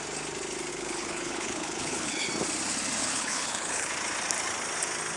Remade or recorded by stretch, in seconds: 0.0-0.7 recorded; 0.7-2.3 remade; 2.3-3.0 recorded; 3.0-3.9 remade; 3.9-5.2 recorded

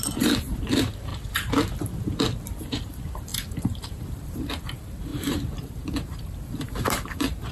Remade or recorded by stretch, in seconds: 0.0-1.1 remade; 1.1-2.5 recorded; 2.5-7.5 remade

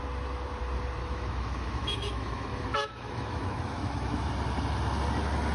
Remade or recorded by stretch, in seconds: 0.0-1.0 recorded; 1.0-4.3 remade; 4.3-5.5 recorded

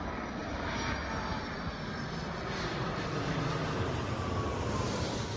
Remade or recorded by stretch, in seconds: 0.0-5.4 recorded

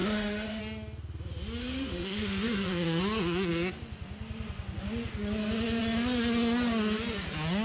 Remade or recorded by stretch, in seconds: 0.0-0.6 remade; 0.6-1.6 recorded; 1.6-3.0 remade; 3.0-7.6 recorded